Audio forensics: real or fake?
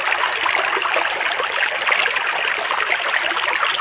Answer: real